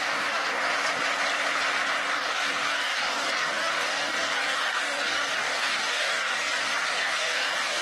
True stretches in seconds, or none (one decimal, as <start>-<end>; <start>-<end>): 0.6-2.1